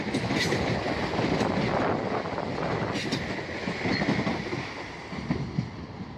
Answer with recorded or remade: recorded